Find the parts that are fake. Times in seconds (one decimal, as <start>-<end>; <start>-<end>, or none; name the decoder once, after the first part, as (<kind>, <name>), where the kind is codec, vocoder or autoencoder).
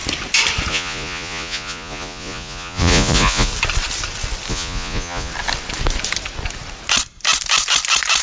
0.7-3.5 (vocoder, Vocos); 4.5-5.3